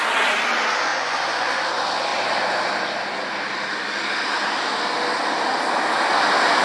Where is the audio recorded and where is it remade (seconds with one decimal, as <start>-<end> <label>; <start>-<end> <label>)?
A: 0.0-0.9 recorded; 0.9-1.6 remade; 1.6-6.6 recorded